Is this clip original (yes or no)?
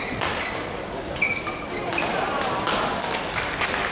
yes